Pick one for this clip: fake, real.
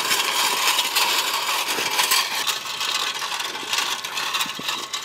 real